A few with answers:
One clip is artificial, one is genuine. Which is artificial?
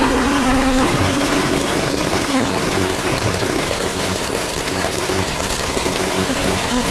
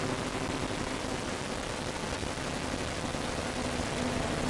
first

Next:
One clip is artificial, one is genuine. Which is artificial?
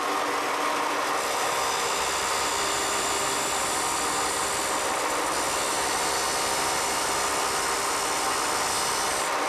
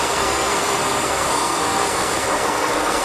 second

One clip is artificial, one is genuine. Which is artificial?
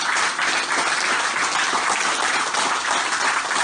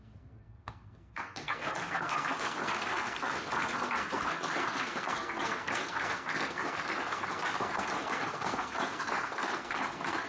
second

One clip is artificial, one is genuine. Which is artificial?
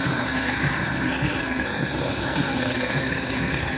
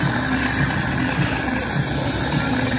first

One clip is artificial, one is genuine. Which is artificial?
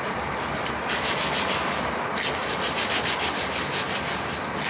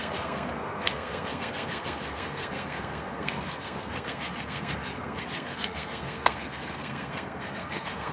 second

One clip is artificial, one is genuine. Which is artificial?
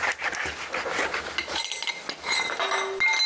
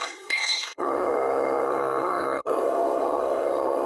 second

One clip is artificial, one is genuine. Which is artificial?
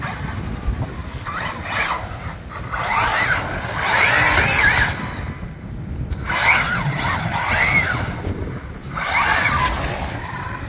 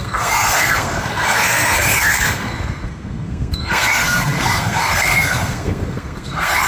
second